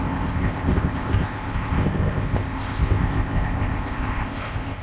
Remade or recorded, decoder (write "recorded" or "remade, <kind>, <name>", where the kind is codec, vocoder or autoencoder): remade, codec, ZipCodec